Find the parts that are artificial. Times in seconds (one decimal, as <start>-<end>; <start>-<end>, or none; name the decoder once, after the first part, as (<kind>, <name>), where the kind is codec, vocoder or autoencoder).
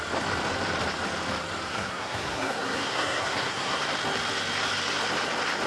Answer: 1.7-3.8 (codec, SNAC)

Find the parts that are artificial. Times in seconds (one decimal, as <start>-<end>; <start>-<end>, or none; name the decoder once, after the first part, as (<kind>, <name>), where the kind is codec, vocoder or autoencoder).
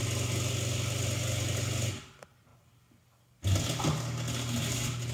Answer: none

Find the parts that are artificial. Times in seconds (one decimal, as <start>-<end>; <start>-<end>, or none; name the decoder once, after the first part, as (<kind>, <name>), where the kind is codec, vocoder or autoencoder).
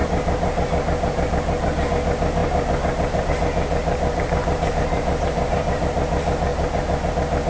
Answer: 0.0-1.9 (vocoder, BigVGAN v2); 2.4-3.3; 3.8-5.8; 6.5-7.1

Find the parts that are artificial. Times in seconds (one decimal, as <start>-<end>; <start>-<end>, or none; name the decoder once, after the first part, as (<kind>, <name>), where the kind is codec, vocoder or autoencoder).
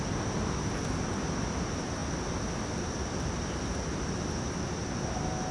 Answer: none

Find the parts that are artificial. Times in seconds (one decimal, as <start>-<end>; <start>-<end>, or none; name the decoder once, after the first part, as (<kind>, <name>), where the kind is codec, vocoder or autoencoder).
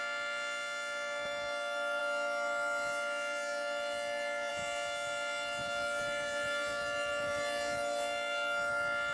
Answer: none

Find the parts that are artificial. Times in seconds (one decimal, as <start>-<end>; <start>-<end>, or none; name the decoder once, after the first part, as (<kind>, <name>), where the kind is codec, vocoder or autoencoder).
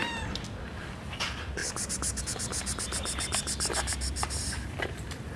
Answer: 0.0-1.6 (vocoder, BigVGAN v2); 2.2-5.4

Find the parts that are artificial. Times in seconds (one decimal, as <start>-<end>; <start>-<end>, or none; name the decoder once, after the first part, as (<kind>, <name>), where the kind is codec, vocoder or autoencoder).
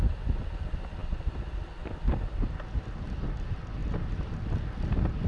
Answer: none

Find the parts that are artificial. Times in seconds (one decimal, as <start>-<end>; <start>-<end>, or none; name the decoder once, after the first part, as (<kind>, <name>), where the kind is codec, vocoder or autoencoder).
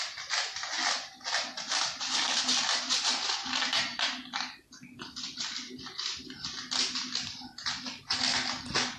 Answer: none